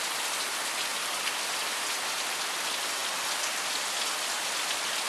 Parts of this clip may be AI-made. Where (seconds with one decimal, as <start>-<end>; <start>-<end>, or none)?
none